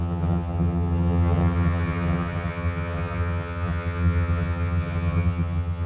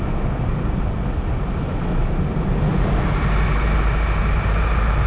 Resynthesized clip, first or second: first